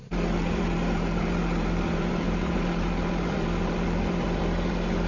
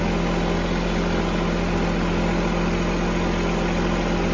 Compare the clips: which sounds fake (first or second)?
first